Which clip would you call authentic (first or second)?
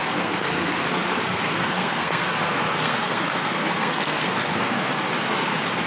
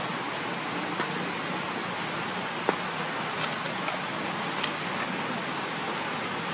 second